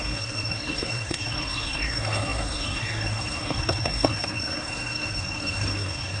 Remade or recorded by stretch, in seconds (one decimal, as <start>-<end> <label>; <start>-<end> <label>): 0.0-6.2 remade